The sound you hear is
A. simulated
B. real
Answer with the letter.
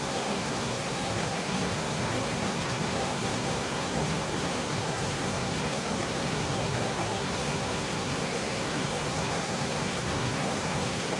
A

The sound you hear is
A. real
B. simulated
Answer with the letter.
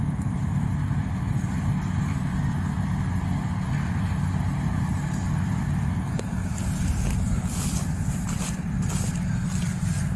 A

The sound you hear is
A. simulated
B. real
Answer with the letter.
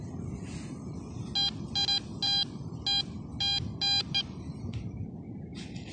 B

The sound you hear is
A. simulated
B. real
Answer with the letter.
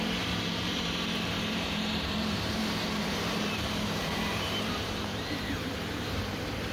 A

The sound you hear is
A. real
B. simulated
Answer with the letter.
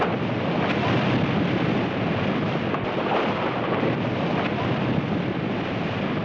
A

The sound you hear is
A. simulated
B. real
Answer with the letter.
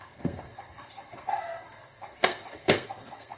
A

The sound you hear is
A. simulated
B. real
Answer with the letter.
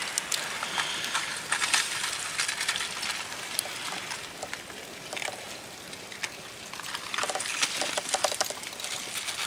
B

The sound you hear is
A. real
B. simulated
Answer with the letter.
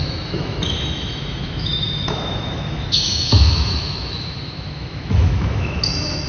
B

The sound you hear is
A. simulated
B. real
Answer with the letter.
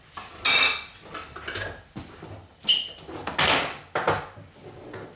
B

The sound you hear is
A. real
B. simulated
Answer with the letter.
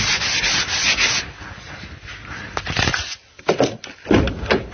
A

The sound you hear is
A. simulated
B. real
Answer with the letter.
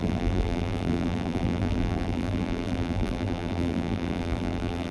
A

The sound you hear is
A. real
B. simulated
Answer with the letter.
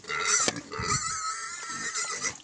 A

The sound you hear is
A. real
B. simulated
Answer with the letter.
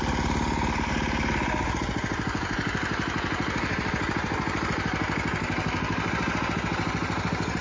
A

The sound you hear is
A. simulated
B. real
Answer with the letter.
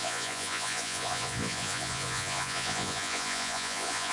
A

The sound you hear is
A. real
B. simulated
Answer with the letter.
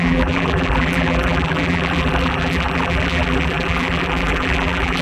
B